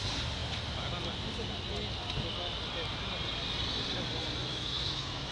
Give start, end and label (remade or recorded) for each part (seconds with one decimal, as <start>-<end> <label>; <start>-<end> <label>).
0.0-4.5 recorded; 4.5-5.3 remade